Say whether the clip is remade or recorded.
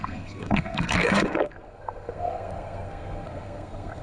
remade